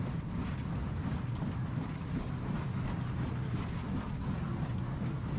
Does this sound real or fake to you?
real